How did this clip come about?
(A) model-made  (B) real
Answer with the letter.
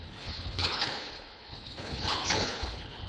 A